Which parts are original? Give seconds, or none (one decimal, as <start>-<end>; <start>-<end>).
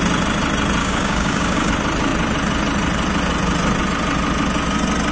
0.0-0.8; 1.7-5.1